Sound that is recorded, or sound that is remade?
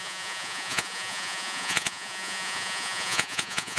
remade